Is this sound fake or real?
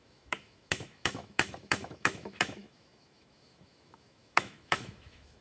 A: fake